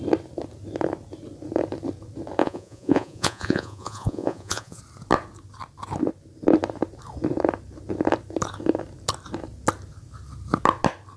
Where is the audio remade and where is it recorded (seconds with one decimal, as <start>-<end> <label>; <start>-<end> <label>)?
0.0-2.4 recorded; 2.4-4.8 remade; 4.8-11.2 recorded